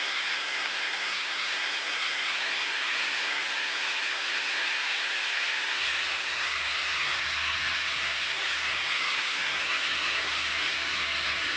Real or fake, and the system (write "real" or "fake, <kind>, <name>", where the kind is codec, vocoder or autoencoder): fake, codec, SNAC